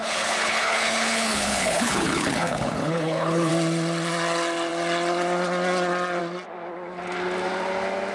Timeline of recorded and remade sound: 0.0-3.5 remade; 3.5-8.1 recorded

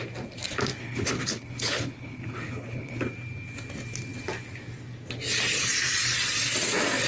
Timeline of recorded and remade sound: 0.0-0.8 recorded; 0.8-3.0 remade; 3.0-7.1 recorded

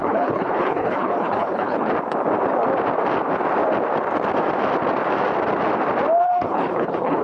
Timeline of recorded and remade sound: 0.0-1.9 remade; 1.9-6.2 recorded; 6.2-7.2 remade

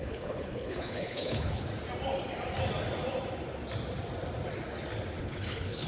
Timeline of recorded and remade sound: 0.0-1.7 remade; 1.7-5.2 recorded; 5.2-5.9 remade

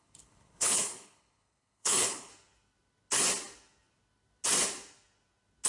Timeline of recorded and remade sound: 0.0-2.3 remade; 2.3-5.7 recorded

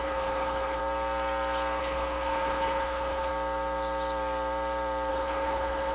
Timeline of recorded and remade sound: 0.0-0.8 remade; 0.8-1.8 recorded; 1.8-3.3 remade; 3.3-5.1 recorded; 5.1-5.9 remade

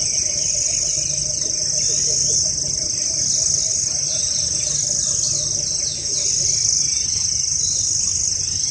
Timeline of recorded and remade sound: 0.0-8.7 recorded

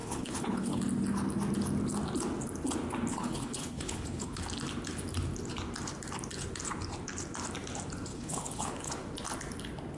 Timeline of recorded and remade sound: 0.0-0.8 remade; 0.8-3.1 recorded; 3.1-4.4 remade; 4.4-8.1 recorded; 8.1-8.9 remade; 8.9-10.0 recorded